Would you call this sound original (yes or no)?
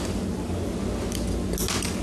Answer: yes